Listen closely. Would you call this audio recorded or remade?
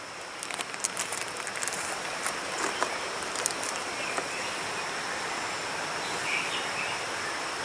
recorded